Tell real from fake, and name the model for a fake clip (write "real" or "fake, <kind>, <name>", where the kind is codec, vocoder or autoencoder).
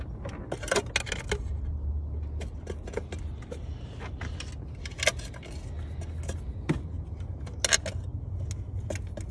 real